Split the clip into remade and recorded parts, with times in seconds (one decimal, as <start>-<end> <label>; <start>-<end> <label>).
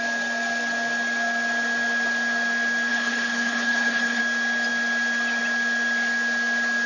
0.0-2.9 recorded; 2.9-4.2 remade; 4.2-6.9 recorded